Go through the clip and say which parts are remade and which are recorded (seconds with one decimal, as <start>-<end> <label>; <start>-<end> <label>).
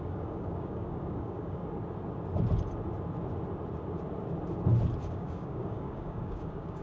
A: 0.0-1.6 remade; 1.6-5.1 recorded; 5.1-6.8 remade